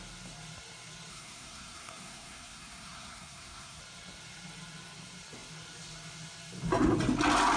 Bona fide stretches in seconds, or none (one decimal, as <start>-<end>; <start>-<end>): 0.0-1.1; 3.8-7.6